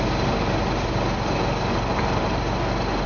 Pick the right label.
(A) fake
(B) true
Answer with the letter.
B